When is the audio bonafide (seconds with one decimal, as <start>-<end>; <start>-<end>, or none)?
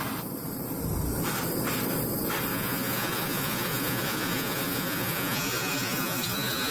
0.0-2.5